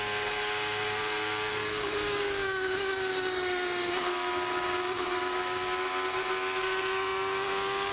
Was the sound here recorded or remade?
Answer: remade